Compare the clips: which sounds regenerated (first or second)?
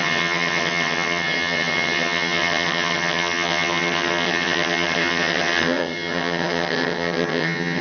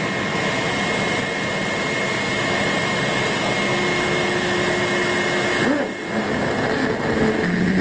first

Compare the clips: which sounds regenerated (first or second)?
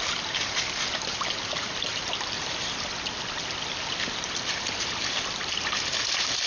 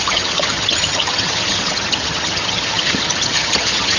second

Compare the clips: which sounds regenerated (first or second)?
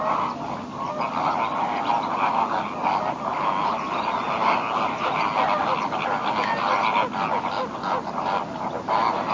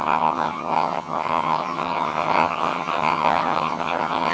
second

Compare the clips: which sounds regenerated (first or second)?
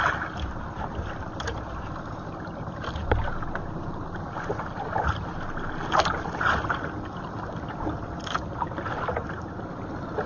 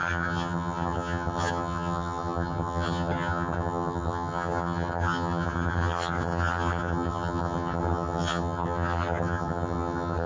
second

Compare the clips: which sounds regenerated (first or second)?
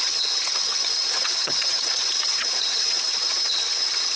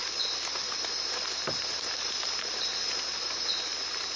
first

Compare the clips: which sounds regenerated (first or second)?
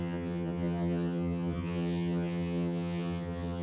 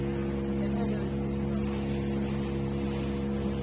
first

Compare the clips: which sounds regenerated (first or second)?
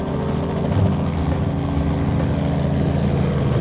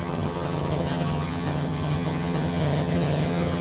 second